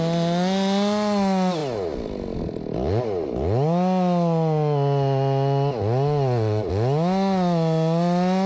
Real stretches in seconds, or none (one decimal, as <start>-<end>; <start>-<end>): 0.0-8.5